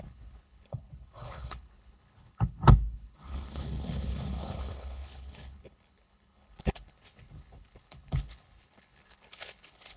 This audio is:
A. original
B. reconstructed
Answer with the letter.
B